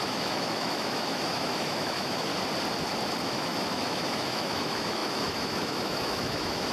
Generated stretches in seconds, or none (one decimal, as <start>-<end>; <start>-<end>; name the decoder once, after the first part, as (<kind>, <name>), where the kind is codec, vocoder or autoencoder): 0.0-2.3 (autoencoder, DAC-VAE); 3.3-6.7